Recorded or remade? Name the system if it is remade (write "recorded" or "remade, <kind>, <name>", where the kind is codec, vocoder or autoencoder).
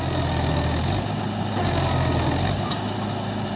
recorded